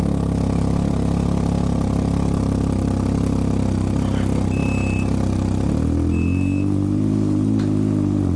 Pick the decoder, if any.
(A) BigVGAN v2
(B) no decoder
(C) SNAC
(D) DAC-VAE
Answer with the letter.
B